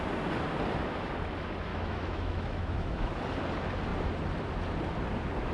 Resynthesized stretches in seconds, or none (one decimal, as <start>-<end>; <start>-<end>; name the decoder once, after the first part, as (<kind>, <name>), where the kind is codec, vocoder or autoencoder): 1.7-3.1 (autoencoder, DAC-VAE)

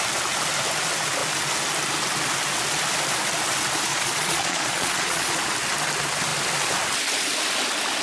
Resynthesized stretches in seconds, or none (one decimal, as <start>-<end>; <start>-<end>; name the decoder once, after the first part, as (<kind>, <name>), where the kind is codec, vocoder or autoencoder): 3.9-5.3 (vocoder, Vocos)

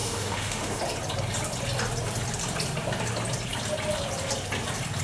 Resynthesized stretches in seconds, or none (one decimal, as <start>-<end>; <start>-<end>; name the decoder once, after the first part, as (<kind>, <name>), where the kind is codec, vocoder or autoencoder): 0.0-0.8 (autoencoder, DAC-VAE)

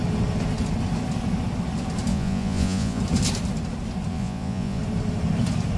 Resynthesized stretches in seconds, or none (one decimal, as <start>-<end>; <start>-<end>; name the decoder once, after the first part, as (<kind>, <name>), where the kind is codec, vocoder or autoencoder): 2.1-3.0 (vocoder, Vocos); 4.1-4.8